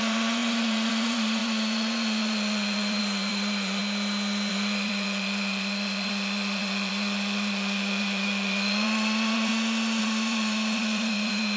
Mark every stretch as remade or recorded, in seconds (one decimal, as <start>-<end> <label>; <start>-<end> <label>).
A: 0.0-3.8 remade; 3.8-4.5 recorded; 4.5-9.5 remade; 9.5-10.0 recorded; 10.0-11.6 remade